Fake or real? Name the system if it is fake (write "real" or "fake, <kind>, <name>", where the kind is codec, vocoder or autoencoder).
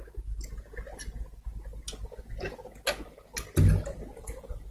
real